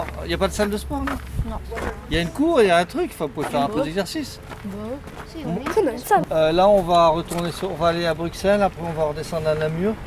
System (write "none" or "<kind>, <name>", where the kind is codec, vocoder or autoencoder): none